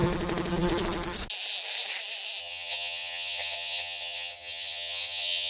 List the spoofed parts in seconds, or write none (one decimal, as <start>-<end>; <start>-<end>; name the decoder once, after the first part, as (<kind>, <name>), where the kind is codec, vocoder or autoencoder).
2.4-5.5 (vocoder, HiFi-GAN)